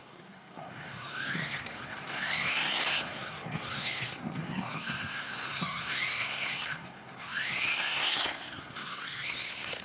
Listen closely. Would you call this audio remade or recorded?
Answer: remade